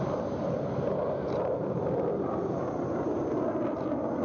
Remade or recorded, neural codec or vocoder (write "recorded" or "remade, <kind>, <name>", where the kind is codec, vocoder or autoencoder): recorded